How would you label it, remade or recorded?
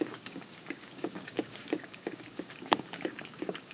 remade